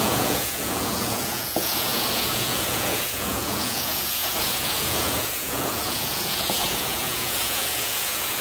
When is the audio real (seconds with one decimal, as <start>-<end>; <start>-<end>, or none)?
none